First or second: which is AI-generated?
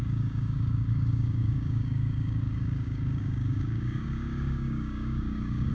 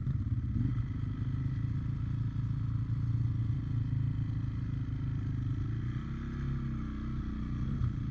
first